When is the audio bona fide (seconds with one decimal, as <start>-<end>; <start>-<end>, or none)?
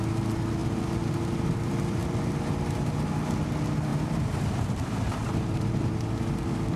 0.0-3.9; 6.0-6.8